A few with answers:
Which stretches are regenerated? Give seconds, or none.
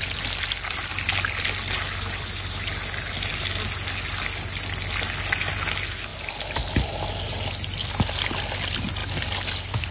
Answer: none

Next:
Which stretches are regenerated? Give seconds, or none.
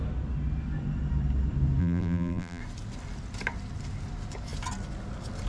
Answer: 1.8-2.6 (vocoder, BigVGAN v2)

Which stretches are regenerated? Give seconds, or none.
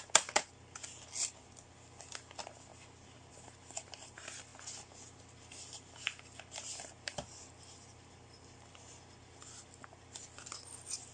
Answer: 0.0-2.7 (vocoder, BigVGAN v2); 3.3-4.5; 5.2-11.1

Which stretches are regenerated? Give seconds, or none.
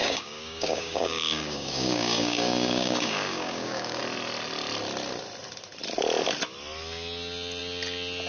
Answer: 0.0-4.0 (codec, DAC)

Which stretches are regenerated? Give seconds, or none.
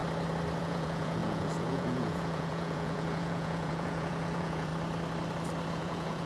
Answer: 0.6-4.7 (vocoder, Vocos); 5.7-6.3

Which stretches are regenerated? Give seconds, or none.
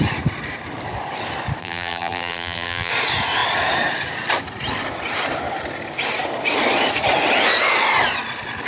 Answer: 1.6-2.9 (vocoder, BigVGAN v2)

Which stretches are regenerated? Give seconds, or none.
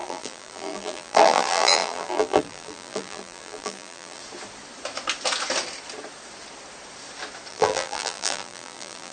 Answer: 0.0-4.2 (vocoder, BigVGAN v2); 7.5-9.1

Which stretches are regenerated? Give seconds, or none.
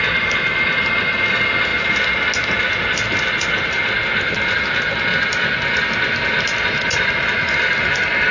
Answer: none